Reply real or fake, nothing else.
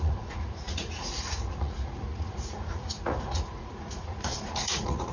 fake